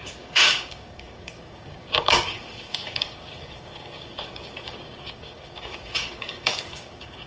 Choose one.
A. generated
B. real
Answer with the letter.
A